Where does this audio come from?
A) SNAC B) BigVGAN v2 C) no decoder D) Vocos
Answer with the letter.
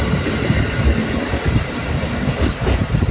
B